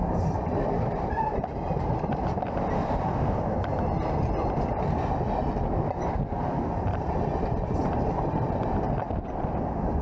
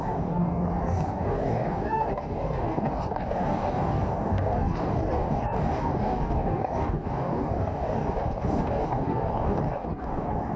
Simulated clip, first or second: second